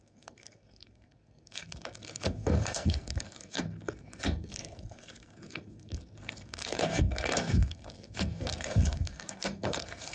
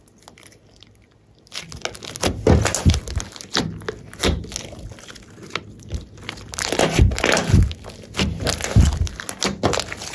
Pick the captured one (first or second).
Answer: second